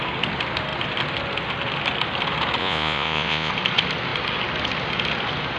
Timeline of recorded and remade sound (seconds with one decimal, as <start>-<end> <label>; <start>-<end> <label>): 0.0-2.6 recorded; 2.6-3.5 remade; 3.5-5.6 recorded